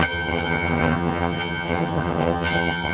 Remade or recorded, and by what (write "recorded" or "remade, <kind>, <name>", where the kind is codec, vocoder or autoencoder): remade, vocoder, HiFi-GAN